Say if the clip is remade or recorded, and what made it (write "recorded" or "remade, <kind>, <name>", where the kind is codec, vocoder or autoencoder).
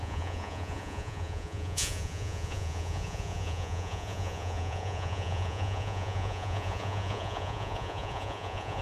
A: remade, vocoder, Vocos